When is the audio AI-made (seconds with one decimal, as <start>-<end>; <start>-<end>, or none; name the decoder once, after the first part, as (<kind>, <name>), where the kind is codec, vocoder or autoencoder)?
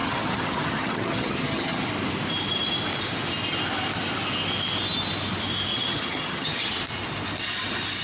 0.0-1.9 (vocoder, HiFi-GAN); 5.7-6.7